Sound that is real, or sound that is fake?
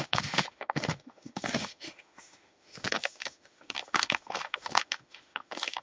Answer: fake